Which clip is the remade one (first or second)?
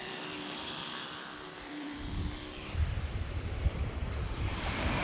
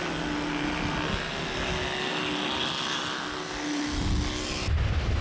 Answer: first